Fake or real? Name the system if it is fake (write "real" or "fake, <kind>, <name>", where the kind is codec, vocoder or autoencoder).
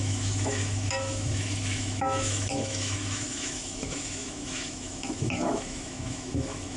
fake, autoencoder, DAC-VAE